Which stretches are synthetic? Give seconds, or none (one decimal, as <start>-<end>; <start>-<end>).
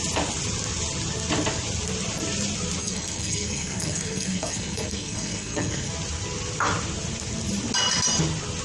2.8-5.9